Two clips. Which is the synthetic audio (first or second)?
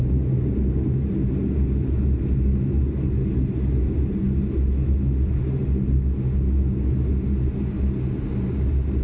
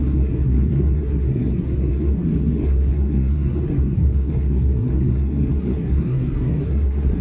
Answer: second